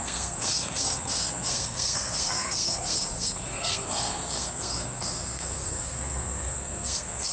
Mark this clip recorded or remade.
remade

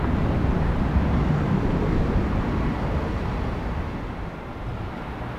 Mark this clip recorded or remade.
recorded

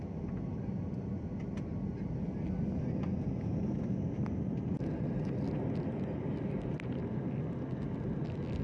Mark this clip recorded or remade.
recorded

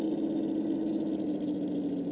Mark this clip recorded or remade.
recorded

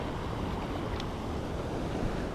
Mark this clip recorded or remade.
recorded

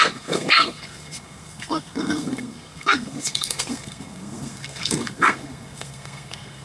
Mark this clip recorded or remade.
remade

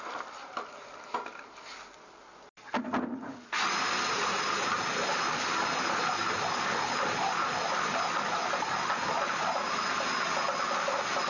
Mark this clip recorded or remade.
recorded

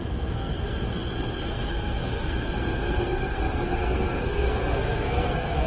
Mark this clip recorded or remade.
remade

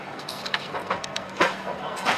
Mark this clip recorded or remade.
remade